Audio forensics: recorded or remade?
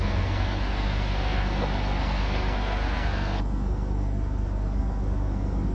remade